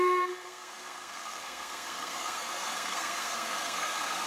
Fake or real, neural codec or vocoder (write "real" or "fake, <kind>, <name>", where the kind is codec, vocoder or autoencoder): fake, codec, SNAC